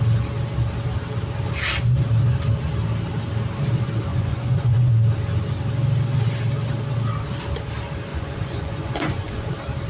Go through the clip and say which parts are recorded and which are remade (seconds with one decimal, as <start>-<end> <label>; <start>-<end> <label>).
0.0-4.1 recorded; 4.1-4.9 remade; 4.9-8.1 recorded; 8.1-9.5 remade; 9.5-9.9 recorded